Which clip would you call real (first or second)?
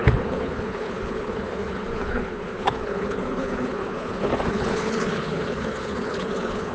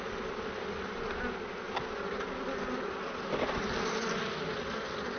second